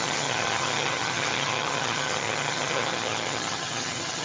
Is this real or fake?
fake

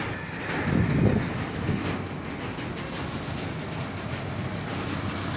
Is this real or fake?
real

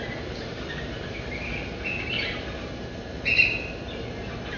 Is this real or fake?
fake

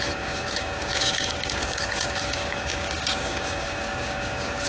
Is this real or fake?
fake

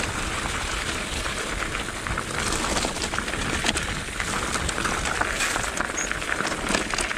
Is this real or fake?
real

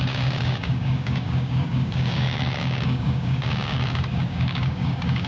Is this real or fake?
fake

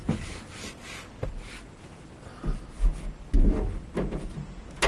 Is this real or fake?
real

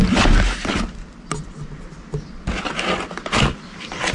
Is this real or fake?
real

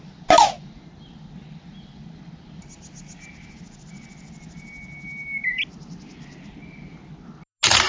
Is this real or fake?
real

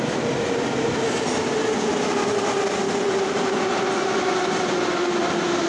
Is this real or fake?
real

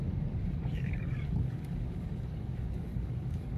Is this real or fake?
fake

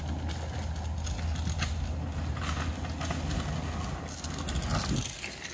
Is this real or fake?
real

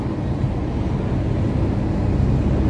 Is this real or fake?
real